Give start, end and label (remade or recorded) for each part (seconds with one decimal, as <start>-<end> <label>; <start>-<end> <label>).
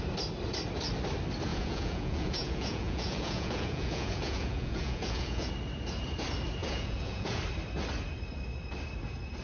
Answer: 0.0-1.5 recorded; 1.5-5.5 remade; 5.5-6.6 recorded; 6.6-7.4 remade; 7.4-9.4 recorded